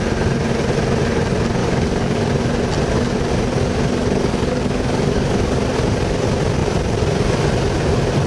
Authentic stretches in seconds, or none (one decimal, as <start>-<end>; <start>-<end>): 0.0-1.6; 2.2-4.0; 5.6-8.3